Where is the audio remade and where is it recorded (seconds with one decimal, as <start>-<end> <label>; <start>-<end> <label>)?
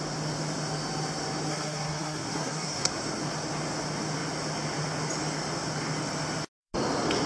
0.0-1.5 recorded; 1.5-2.9 remade; 2.9-7.3 recorded